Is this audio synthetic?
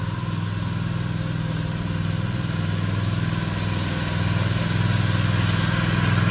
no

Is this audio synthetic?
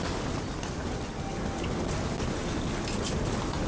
no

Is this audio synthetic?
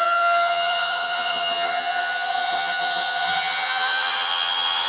yes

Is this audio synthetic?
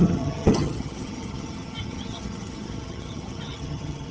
yes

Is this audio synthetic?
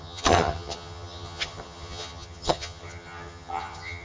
yes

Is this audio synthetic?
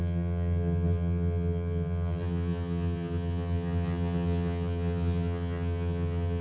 yes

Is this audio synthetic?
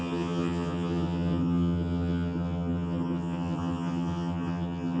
yes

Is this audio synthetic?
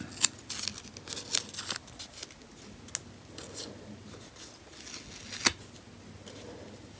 no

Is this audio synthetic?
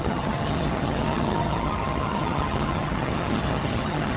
yes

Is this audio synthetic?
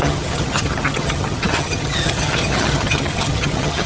yes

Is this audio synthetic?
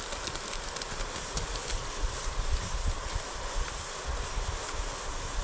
no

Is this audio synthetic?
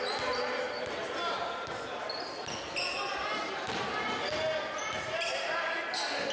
no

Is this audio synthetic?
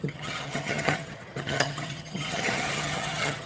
yes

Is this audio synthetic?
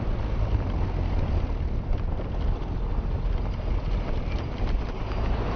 no